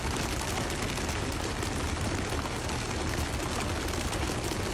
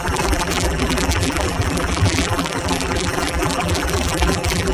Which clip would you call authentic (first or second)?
first